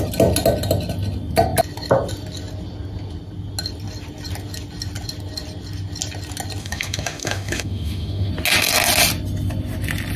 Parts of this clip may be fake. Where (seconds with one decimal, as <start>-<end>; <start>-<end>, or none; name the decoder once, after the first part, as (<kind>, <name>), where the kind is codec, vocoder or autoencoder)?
6.6-8.3 (autoencoder, DAC-VAE)